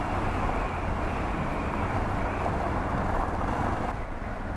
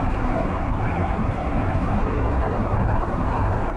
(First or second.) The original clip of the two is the first